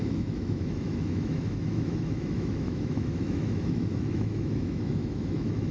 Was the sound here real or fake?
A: fake